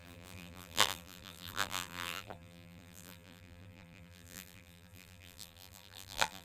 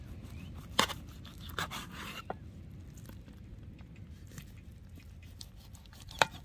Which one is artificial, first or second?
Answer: first